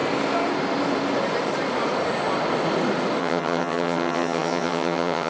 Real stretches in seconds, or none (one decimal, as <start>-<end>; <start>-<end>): 0.0-3.2

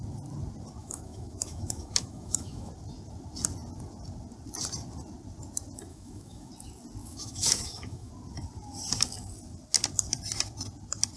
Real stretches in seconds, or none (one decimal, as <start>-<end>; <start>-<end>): 0.0-0.8; 2.7-5.9; 6.5-7.0; 8.1-11.2

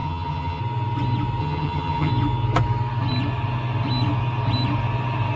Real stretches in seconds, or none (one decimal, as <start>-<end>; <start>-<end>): 0.6-1.4; 2.1-5.4

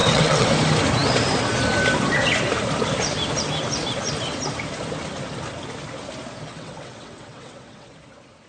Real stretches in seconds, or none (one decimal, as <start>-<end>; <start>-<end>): 0.5-6.5; 7.9-8.5